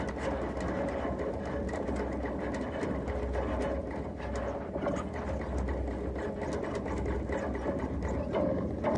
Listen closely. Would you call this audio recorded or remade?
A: recorded